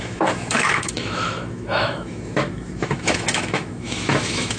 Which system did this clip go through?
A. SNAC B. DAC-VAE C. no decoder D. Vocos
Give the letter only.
B